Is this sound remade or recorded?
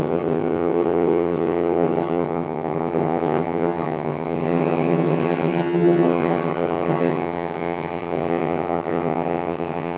remade